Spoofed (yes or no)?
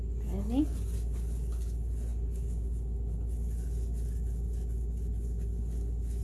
no